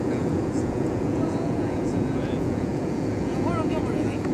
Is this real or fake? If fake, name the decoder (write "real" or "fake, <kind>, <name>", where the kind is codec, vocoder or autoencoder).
fake, vocoder, Vocos